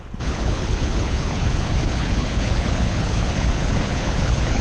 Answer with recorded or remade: remade